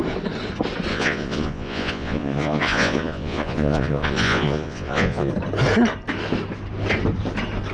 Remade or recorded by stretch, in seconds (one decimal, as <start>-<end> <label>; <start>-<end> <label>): 0.0-0.9 recorded; 0.9-5.3 remade; 5.3-7.7 recorded

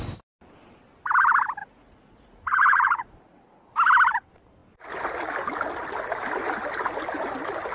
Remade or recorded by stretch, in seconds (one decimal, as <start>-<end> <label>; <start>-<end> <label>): 0.0-1.6 recorded; 1.6-3.4 remade; 3.4-7.7 recorded